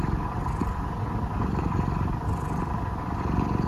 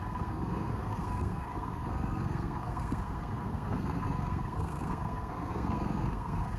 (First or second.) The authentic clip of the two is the first